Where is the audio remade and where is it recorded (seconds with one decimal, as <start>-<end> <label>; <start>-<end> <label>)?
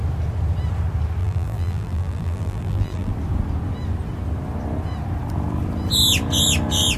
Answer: 0.0-1.2 recorded; 1.2-3.1 remade; 3.1-7.0 recorded